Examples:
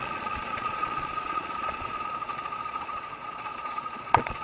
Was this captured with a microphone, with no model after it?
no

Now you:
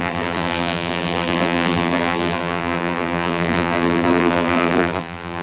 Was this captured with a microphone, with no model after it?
no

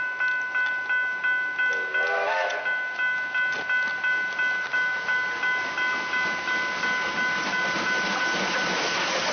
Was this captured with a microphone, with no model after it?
yes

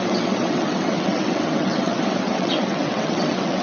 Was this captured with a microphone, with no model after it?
no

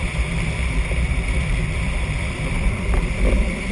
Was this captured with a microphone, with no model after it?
no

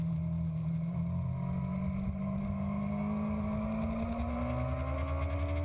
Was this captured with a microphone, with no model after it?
yes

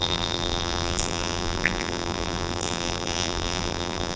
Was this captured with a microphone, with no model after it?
no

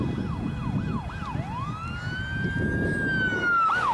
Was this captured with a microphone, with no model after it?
yes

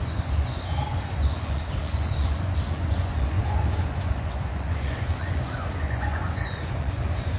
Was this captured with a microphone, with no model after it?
no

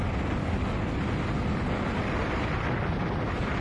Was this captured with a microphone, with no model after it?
yes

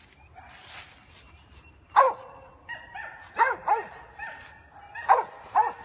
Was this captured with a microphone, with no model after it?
yes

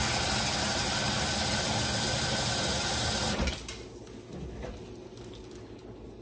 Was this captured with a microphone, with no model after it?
yes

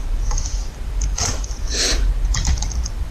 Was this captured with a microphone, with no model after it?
no